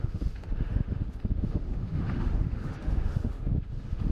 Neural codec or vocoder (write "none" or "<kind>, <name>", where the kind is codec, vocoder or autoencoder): autoencoder, DAC-VAE